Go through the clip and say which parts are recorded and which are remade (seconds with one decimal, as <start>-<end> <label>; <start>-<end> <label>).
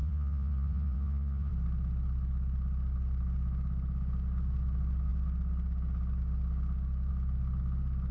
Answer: 0.0-1.5 remade; 1.5-8.1 recorded